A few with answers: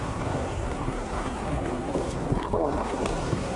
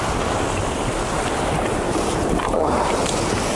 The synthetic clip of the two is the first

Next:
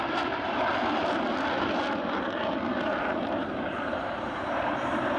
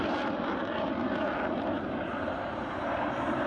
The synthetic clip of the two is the first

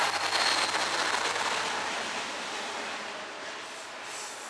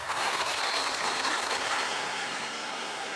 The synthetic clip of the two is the second